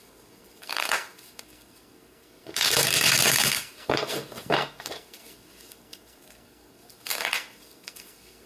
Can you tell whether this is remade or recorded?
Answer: remade